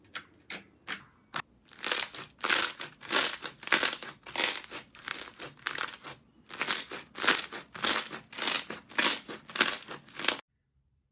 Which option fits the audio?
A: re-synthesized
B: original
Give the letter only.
B